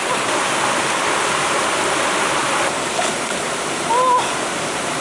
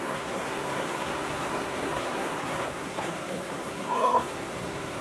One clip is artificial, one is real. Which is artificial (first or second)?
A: second